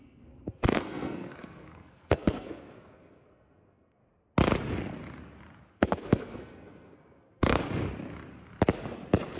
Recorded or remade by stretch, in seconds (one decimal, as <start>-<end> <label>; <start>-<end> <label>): 0.0-4.0 remade; 4.0-5.7 recorded; 5.7-7.6 remade; 7.6-9.4 recorded